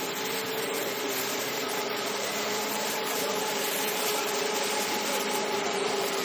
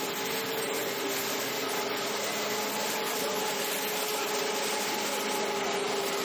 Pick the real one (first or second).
second